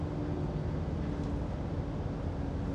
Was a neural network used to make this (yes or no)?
no